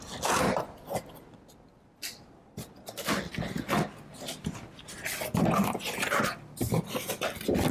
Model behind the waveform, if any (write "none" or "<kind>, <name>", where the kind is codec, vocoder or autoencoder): none